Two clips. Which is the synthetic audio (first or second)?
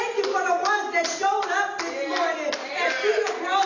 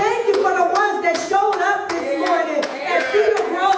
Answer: second